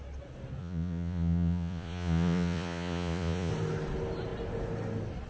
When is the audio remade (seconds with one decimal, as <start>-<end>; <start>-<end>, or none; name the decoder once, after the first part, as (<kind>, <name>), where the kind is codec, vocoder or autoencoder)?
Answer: 0.6-3.5 (vocoder, Vocos)